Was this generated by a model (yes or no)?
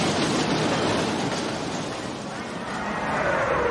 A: no